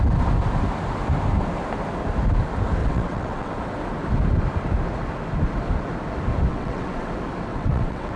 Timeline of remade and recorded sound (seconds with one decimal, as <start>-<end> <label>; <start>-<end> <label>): 0.0-2.8 recorded; 2.8-3.5 remade; 3.5-6.5 recorded; 6.5-7.1 remade; 7.1-7.5 recorded; 7.5-8.2 remade